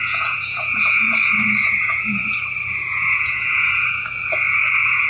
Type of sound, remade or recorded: remade